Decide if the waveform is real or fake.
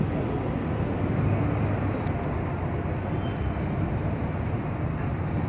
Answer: real